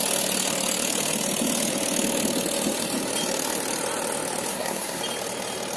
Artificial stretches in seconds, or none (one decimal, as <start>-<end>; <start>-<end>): 4.5-5.0